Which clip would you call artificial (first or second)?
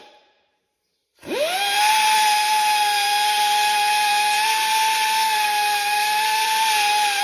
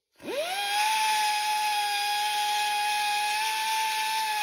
first